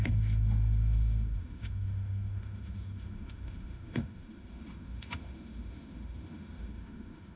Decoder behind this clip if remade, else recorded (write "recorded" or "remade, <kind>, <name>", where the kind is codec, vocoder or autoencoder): remade, autoencoder, DAC-VAE